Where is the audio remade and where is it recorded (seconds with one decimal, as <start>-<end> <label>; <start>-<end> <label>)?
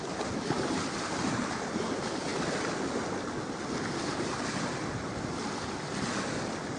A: 0.0-6.8 recorded